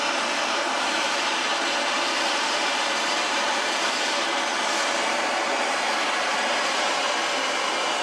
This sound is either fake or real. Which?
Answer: fake